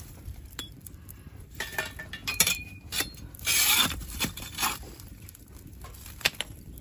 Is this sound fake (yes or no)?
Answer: yes